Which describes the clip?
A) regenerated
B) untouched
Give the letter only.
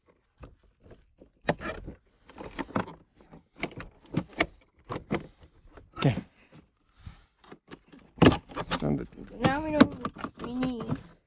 B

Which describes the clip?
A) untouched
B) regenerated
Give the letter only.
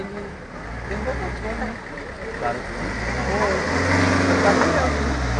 A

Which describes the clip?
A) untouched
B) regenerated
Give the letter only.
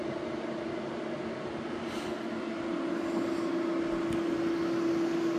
A